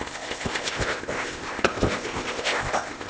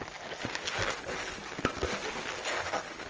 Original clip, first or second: second